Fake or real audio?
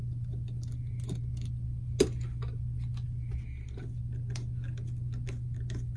real